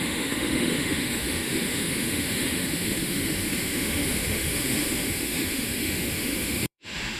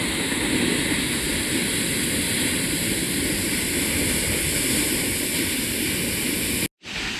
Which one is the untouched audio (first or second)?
second